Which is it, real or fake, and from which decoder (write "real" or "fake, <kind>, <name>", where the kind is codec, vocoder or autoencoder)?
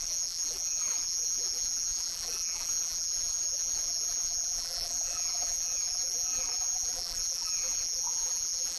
fake, vocoder, BigVGAN v2